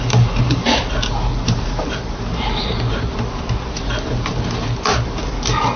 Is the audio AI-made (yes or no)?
no